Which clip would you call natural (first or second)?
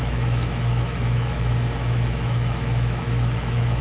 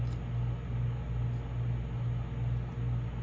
second